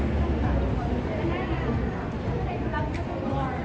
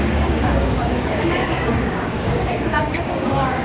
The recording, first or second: first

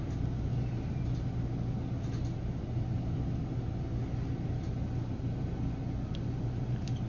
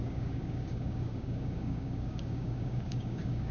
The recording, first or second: first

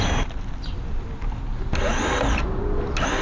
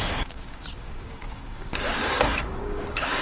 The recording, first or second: first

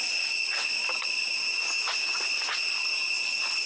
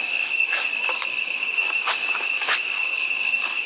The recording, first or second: first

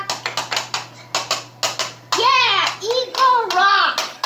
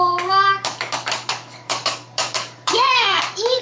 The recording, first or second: first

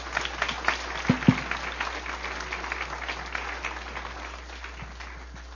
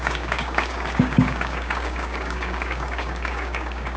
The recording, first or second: first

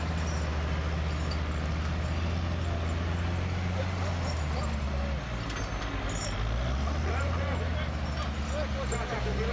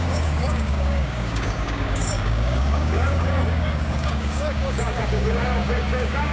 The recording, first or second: first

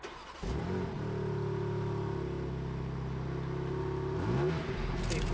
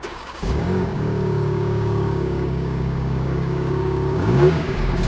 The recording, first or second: first